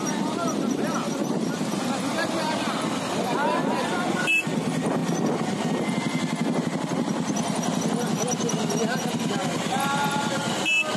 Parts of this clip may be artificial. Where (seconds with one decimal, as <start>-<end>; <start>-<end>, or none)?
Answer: none